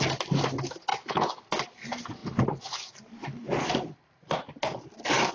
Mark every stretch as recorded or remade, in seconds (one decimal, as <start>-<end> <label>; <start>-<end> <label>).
0.0-0.9 recorded; 0.9-1.4 remade; 1.4-5.3 recorded